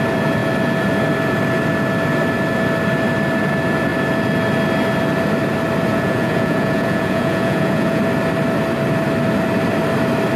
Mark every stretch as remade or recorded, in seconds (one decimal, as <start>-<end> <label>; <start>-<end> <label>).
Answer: 0.0-5.9 recorded; 5.9-8.0 remade; 8.0-10.4 recorded